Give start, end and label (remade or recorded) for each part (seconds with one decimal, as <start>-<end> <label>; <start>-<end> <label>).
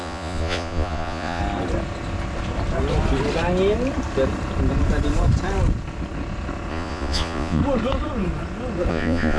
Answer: 0.0-1.4 remade; 1.4-6.7 recorded; 6.7-7.6 remade; 7.6-8.9 recorded; 8.9-9.4 remade